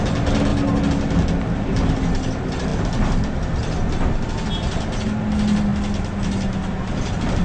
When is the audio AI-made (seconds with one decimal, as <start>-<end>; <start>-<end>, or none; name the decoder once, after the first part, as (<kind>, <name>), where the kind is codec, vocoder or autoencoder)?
none